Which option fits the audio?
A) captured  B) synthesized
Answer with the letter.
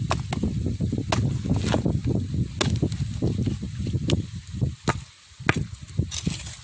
A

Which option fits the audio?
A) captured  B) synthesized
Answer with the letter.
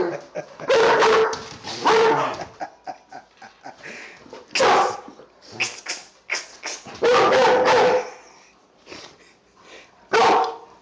A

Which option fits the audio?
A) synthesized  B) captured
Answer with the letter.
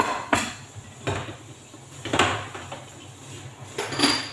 B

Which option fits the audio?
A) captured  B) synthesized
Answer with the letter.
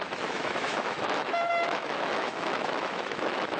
B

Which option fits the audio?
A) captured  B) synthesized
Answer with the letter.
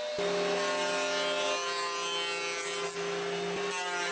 A